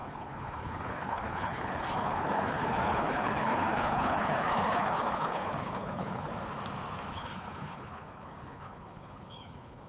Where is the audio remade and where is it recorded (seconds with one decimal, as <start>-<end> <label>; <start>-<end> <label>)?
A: 0.0-6.3 remade; 6.3-7.1 recorded; 7.1-9.9 remade

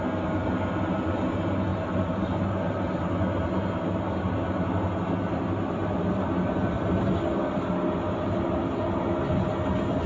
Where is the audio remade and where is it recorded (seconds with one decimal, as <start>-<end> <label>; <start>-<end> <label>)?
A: 0.0-10.1 recorded

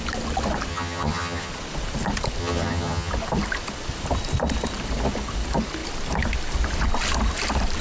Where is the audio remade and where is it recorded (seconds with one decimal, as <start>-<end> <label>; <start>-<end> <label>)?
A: 0.0-0.7 recorded; 0.7-1.5 remade; 1.5-2.4 recorded; 2.4-3.1 remade; 3.1-7.8 recorded

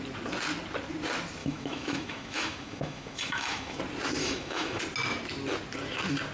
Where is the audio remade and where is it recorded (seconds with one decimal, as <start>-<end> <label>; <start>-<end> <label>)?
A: 0.0-1.4 recorded; 1.4-3.8 remade; 3.8-4.2 recorded; 4.2-4.8 remade; 4.8-6.3 recorded

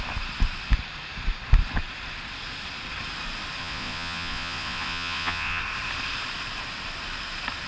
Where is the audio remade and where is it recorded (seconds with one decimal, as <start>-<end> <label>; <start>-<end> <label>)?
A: 0.0-3.6 recorded; 3.6-5.6 remade; 5.6-7.7 recorded

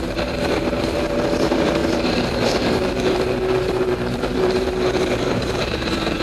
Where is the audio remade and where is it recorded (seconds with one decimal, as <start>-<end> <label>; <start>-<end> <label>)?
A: 0.0-6.2 remade